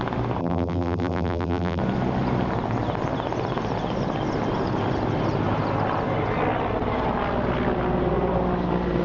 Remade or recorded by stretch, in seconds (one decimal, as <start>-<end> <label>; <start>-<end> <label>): 0.0-0.4 recorded; 0.4-1.8 remade; 1.8-9.0 recorded